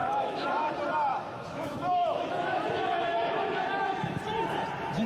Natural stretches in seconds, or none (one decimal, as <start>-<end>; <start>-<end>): 0.7-1.1; 4.2-5.1

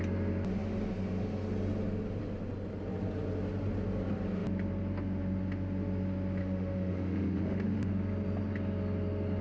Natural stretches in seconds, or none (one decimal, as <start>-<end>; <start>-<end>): 0.0-6.4; 7.9-9.4

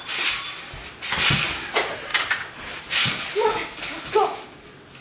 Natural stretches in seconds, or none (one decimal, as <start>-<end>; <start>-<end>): 0.0-5.0